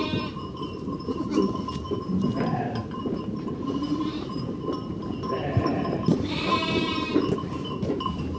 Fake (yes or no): yes